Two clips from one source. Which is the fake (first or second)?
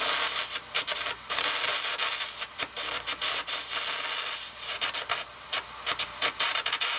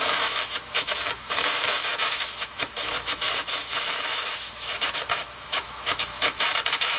second